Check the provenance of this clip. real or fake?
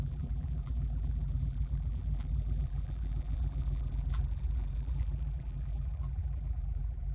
fake